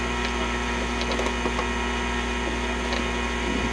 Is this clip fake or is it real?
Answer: real